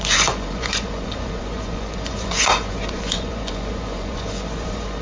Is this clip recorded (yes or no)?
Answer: no